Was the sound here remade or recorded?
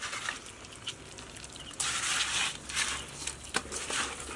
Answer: recorded